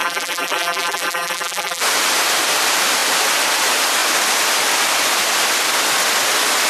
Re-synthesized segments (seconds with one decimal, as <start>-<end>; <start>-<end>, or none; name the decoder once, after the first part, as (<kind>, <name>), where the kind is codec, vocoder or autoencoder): 0.0-1.8 (vocoder, BigVGAN v2)